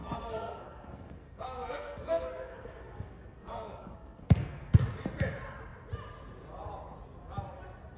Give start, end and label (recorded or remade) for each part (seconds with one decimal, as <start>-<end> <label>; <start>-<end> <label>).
0.0-4.8 remade; 4.8-8.0 recorded